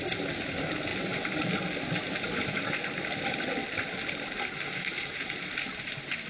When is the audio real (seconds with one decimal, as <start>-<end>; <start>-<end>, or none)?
0.0-6.3